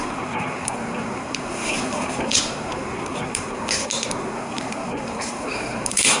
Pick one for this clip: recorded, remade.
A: remade